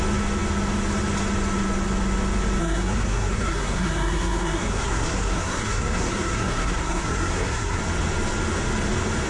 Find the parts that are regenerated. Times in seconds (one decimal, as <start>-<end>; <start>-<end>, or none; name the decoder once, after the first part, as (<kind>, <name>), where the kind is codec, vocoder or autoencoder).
2.6-7.8 (codec, SNAC)